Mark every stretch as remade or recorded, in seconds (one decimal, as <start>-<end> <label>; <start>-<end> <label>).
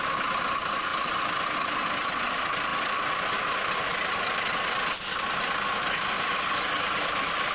0.0-7.5 recorded